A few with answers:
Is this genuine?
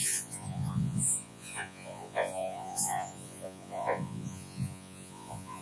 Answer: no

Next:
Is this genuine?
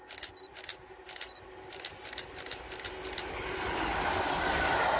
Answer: yes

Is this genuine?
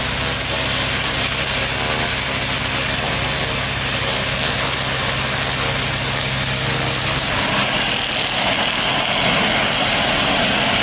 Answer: yes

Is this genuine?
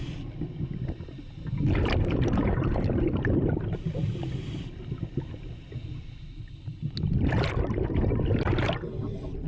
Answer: yes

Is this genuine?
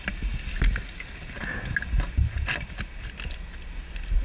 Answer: yes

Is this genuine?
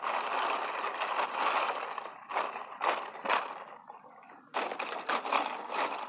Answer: yes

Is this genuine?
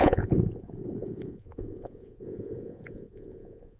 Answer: no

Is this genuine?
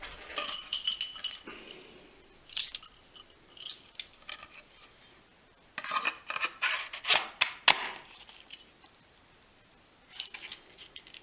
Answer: yes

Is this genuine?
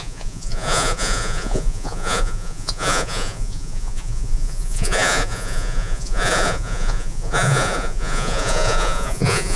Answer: no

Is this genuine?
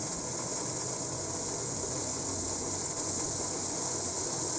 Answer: no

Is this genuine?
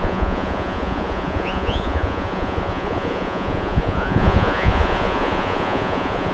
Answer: no